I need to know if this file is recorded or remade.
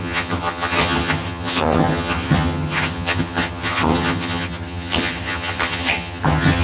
remade